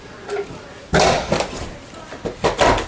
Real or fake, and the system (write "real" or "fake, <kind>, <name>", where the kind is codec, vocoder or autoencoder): real